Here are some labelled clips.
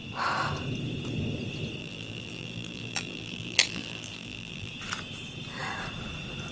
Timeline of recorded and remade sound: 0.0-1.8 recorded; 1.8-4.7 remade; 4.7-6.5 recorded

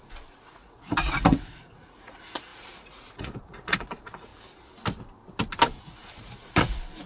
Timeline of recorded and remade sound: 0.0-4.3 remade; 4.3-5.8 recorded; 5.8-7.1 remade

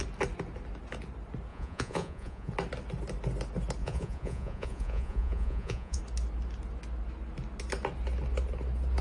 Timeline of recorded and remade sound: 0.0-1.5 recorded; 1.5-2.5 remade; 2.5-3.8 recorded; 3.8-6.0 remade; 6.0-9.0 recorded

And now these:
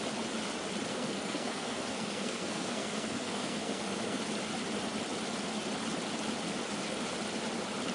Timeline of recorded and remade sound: 0.0-0.9 recorded; 0.9-4.2 remade; 4.2-7.9 recorded

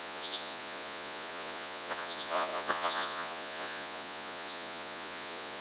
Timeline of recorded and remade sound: 0.0-5.6 remade

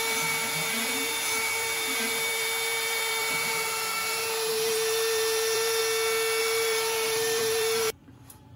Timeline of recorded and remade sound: 0.0-5.8 remade; 5.8-6.4 recorded; 6.4-8.6 remade

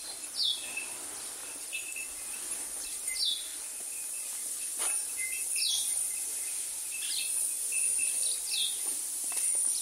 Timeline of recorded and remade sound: 0.0-9.8 recorded